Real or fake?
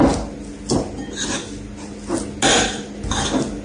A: real